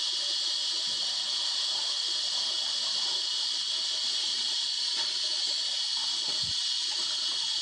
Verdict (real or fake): real